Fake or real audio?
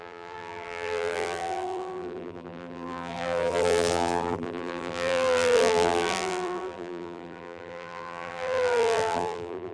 fake